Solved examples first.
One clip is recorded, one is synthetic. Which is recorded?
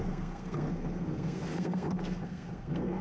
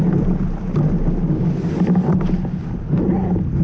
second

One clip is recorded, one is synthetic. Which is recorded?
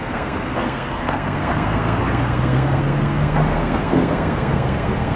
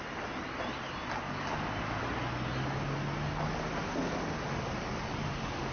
second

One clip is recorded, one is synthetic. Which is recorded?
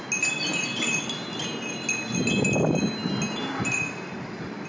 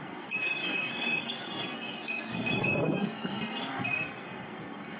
first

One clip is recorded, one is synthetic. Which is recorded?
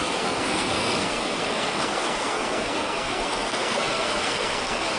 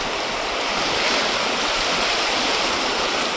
second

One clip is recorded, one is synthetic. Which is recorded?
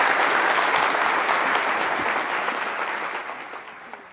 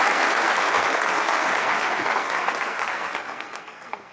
first